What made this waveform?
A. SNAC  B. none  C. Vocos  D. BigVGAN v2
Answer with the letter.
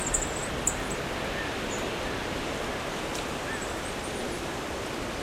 B